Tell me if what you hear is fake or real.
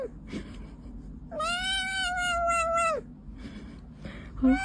real